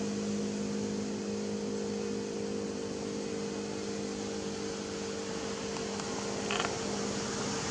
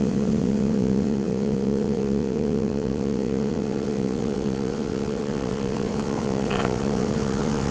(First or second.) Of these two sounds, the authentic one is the first